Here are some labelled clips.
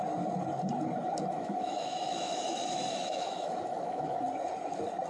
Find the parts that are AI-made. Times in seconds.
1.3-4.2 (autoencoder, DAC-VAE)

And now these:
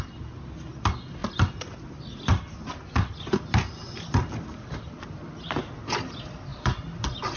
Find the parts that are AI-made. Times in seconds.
none

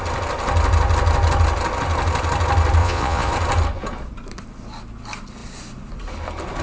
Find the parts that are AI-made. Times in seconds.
2.8-3.3 (vocoder, Vocos)

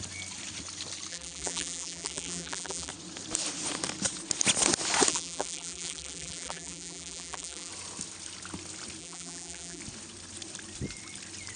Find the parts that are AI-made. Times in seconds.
1.1-2.9 (vocoder, BigVGAN v2); 5.1-7.7; 9.0-9.8

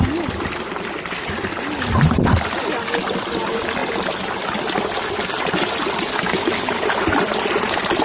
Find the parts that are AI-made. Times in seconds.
none

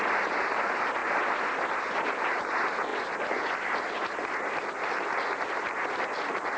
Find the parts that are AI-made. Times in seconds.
none

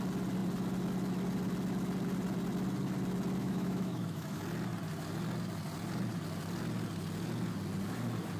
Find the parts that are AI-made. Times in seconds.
3.4-4.4 (autoencoder, DAC-VAE)

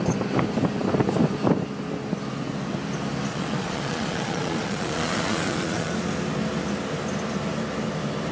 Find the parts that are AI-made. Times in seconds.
3.3-5.9 (vocoder, Vocos)